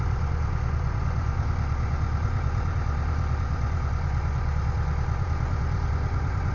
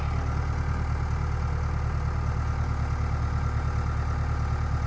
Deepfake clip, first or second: first